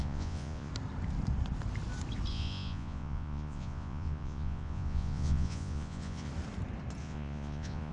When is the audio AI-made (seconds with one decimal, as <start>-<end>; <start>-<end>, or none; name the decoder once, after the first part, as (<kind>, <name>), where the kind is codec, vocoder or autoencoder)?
0.0-0.7 (vocoder, Vocos); 2.3-6.3; 7.0-7.9

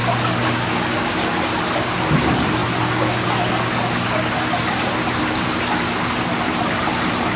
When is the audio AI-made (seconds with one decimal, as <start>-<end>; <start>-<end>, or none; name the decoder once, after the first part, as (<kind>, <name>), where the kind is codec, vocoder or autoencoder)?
1.0-2.6 (vocoder, BigVGAN v2); 5.2-7.4

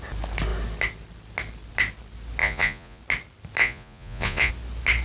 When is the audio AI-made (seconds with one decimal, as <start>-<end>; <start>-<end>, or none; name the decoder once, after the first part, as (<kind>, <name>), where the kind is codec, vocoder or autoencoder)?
2.4-3.0 (vocoder, Vocos); 3.6-4.5

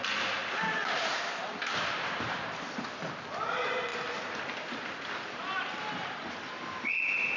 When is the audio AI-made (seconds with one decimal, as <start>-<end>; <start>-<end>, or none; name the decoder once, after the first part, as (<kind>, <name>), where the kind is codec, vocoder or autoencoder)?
3.9-5.9 (vocoder, BigVGAN v2)

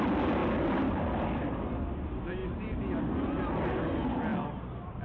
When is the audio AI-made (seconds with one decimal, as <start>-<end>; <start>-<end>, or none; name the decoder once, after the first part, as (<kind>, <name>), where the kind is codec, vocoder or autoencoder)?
none

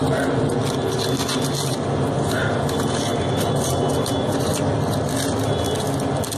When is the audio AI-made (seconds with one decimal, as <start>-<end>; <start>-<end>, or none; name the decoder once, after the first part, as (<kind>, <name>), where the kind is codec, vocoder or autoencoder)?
none

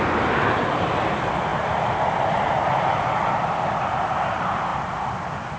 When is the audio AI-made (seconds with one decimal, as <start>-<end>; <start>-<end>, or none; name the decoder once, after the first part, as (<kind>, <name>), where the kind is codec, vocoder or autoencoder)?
none

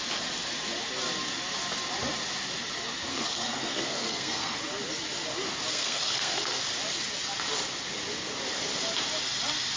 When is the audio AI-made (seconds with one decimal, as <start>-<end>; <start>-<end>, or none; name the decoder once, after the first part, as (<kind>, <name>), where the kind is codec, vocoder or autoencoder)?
3.1-4.6 (codec, SNAC); 5.7-6.6